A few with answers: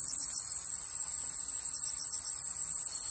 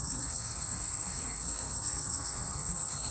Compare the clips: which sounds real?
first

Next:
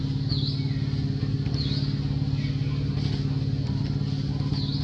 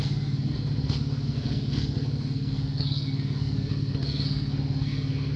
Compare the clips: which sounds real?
first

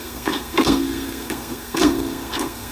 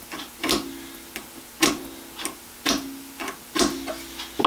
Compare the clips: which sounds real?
second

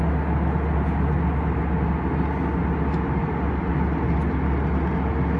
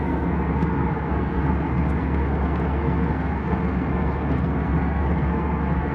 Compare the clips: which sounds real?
first